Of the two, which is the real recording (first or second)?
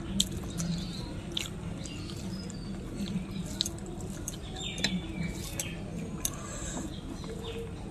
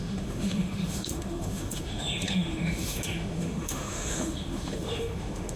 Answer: first